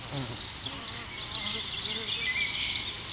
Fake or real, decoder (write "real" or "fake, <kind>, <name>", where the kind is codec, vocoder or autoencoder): real